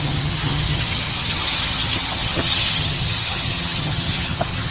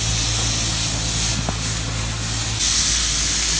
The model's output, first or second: first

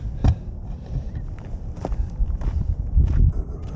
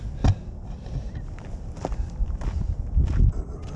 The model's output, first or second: first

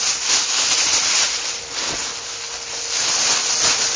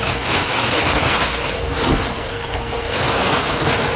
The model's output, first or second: second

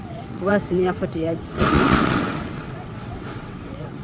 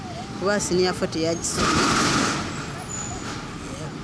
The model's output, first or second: first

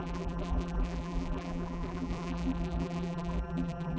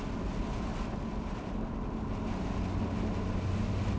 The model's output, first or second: first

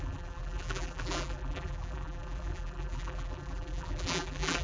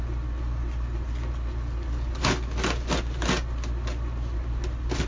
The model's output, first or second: first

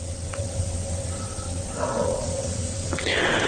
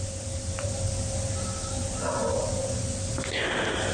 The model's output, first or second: first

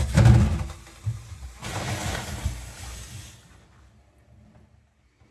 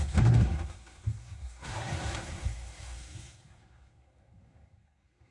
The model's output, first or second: second